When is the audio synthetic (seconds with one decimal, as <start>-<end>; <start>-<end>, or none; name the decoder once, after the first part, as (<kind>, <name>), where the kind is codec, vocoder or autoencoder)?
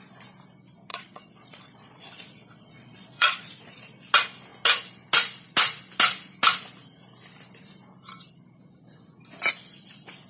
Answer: 0.9-3.8 (vocoder, Vocos)